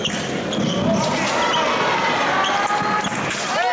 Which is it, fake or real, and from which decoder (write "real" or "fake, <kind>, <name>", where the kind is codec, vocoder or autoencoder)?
real